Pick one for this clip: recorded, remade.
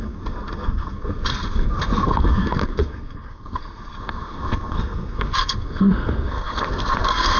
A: remade